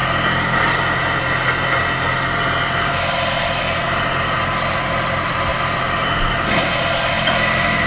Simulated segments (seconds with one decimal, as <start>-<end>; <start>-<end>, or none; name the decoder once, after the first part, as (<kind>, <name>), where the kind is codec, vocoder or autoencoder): none